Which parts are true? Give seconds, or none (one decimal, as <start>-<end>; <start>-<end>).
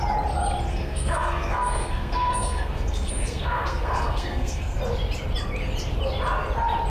0.0-0.7; 4.8-6.9